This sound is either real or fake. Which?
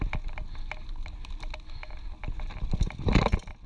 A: real